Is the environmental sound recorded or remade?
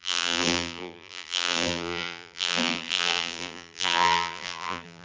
remade